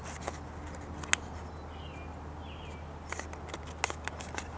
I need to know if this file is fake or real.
real